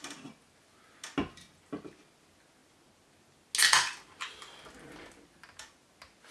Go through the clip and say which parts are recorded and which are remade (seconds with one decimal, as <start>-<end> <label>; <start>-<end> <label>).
0.0-6.3 recorded